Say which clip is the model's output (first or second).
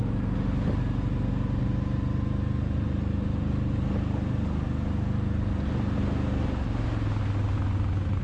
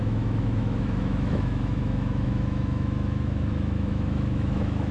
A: second